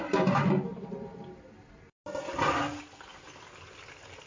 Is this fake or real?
real